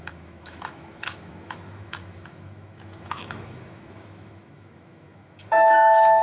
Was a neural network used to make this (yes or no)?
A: yes